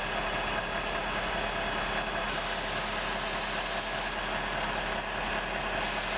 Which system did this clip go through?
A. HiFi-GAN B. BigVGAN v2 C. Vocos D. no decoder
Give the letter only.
D